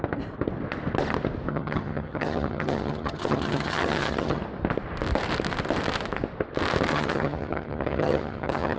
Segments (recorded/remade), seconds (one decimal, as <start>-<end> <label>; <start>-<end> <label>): 0.0-1.5 recorded; 1.5-4.4 remade; 4.4-6.9 recorded; 6.9-8.8 remade